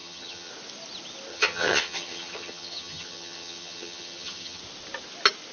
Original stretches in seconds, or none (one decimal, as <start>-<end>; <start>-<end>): 0.5-1.3; 4.6-5.5

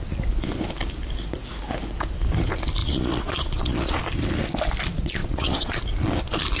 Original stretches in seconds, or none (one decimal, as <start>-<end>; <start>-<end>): 0.0-2.8; 4.0-5.2; 5.8-6.6

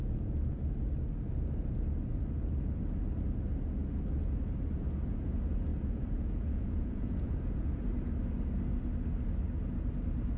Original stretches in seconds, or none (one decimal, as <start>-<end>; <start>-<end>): 0.6-5.7; 7.7-10.4

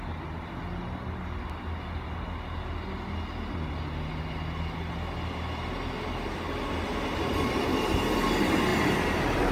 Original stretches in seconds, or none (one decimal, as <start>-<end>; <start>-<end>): 0.0-8.7

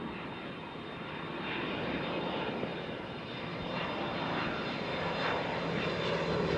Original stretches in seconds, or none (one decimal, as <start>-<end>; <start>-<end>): 0.0-6.6

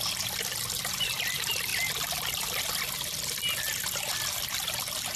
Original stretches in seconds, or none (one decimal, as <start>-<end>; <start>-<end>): 0.0-5.2

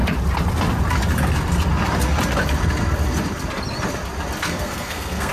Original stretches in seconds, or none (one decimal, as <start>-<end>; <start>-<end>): 0.0-4.4

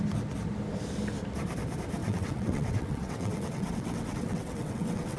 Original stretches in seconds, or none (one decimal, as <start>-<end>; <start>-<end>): 0.0-2.0